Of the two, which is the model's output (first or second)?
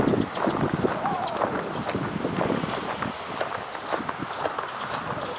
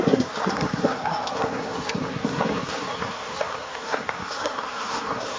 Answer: second